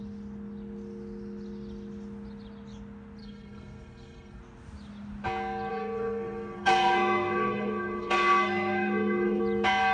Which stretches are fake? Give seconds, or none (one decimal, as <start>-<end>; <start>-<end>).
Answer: 3.2-4.4; 5.7-9.4